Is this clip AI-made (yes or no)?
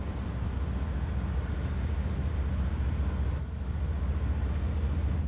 no